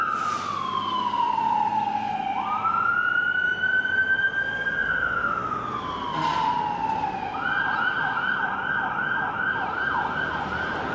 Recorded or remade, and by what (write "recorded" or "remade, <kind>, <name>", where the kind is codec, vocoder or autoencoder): recorded